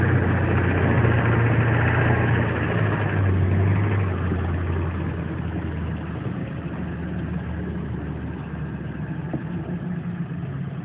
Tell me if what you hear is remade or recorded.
recorded